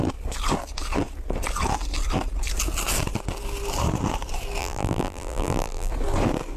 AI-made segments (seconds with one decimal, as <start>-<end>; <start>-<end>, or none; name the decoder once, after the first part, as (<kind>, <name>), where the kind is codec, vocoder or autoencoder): 4.6-5.9 (vocoder, BigVGAN v2)